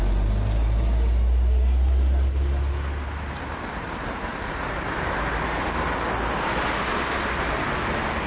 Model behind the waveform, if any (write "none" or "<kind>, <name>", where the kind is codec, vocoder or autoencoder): none